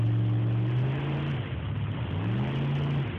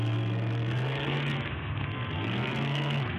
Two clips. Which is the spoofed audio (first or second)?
second